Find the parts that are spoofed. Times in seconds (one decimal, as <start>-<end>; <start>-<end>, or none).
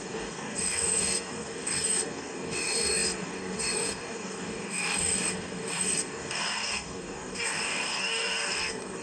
0.0-9.0